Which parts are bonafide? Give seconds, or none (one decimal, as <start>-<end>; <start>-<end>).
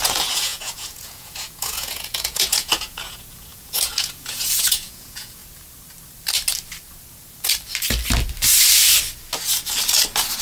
5.4-10.4